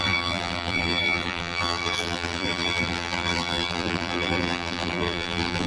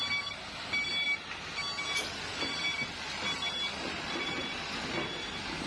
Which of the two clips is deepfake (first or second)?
first